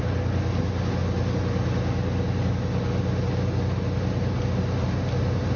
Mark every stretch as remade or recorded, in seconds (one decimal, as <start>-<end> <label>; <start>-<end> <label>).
0.0-5.6 recorded